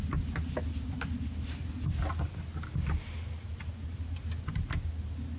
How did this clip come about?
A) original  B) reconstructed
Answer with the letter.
A